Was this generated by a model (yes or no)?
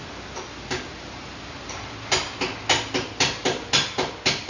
no